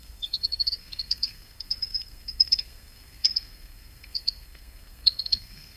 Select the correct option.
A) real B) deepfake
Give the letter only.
B